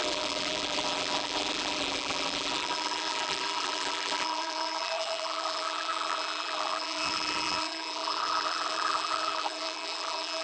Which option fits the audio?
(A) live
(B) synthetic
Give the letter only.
B